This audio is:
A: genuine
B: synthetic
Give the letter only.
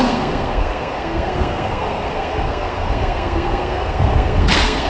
B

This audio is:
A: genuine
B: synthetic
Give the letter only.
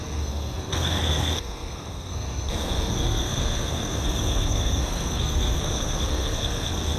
B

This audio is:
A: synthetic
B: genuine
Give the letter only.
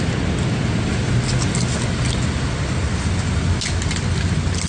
B